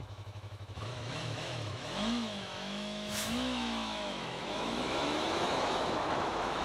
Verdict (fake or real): fake